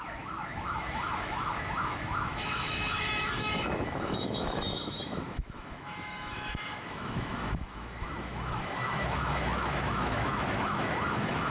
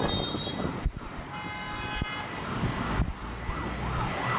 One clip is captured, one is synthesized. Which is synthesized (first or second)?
first